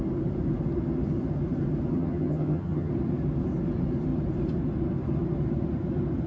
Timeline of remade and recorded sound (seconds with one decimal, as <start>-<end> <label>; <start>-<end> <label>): 0.0-1.9 recorded; 1.9-2.9 remade; 2.9-6.3 recorded